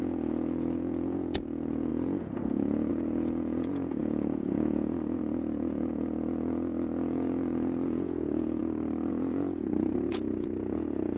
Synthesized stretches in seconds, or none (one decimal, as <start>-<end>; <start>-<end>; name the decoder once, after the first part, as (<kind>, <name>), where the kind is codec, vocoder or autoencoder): 0.0-8.6 (vocoder, Vocos); 9.1-11.2